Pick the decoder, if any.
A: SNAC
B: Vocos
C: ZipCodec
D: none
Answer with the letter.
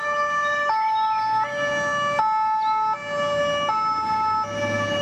D